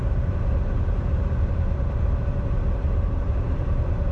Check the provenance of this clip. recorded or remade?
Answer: remade